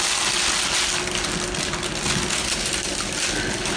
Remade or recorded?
recorded